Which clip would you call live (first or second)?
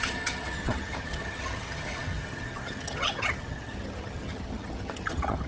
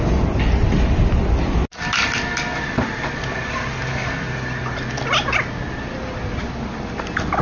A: second